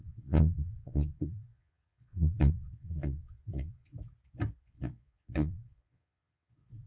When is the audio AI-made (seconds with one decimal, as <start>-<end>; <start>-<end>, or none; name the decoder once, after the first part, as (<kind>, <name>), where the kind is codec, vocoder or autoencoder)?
0.0-3.9 (vocoder, Vocos); 4.6-6.9